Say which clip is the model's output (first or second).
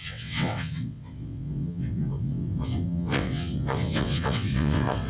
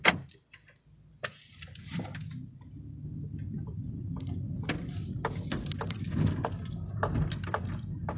first